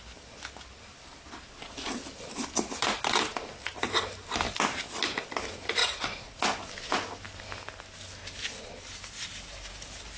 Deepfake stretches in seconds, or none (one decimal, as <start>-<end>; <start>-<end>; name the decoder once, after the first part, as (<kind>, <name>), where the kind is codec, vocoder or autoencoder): 5.8-6.4 (vocoder, Vocos)